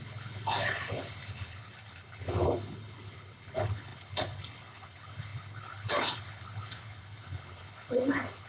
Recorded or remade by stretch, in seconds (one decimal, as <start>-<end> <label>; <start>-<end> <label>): 0.0-8.5 remade